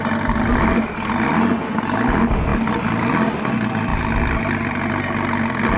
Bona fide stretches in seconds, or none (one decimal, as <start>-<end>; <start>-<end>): 0.0-2.5; 3.1-5.8